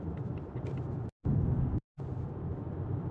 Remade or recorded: remade